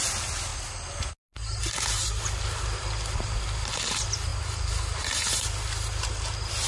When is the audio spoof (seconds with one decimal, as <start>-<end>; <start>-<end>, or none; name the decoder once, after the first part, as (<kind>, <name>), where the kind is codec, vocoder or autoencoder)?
none